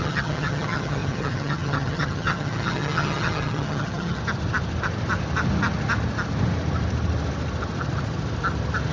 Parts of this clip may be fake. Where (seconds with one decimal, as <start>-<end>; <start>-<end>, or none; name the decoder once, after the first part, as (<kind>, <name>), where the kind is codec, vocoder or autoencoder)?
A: 0.0-4.2 (vocoder, HiFi-GAN)